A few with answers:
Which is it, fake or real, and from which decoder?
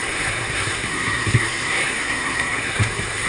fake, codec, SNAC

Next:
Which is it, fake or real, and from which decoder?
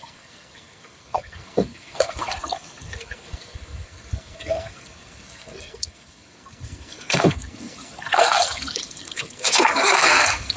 fake, codec, SNAC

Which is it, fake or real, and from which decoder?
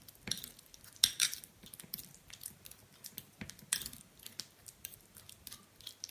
real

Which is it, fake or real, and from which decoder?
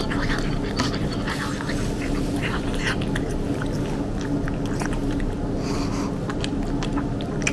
real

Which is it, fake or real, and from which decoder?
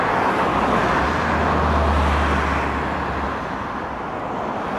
real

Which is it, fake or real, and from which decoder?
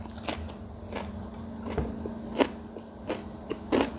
real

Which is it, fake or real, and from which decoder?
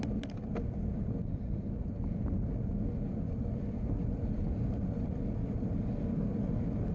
real